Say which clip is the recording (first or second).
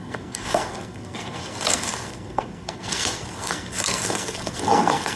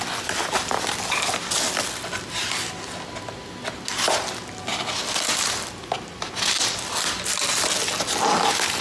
second